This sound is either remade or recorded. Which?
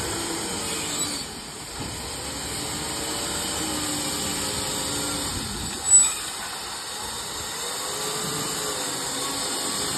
recorded